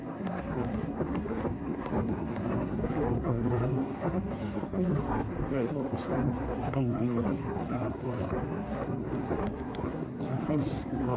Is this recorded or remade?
remade